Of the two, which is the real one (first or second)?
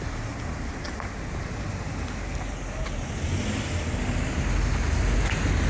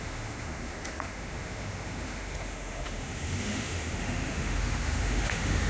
first